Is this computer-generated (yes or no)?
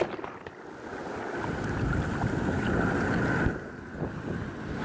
no